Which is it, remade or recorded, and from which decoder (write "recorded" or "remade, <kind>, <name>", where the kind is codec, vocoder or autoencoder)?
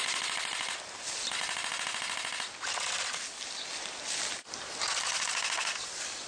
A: recorded